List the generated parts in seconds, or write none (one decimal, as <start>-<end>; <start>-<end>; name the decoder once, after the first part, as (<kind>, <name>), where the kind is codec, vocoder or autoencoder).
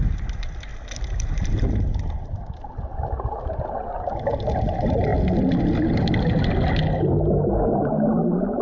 none